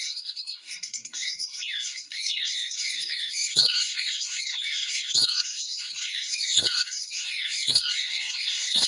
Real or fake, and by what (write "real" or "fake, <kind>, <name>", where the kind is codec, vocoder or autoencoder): fake, codec, SNAC